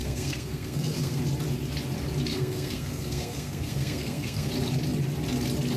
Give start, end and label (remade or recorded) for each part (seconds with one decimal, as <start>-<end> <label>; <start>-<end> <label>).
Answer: 0.0-1.2 remade; 1.2-2.3 recorded; 2.3-4.5 remade; 4.5-5.8 recorded